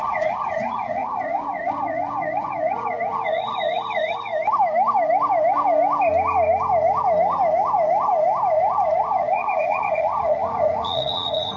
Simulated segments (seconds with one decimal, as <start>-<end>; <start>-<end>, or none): 0.0-4.3; 9.0-11.6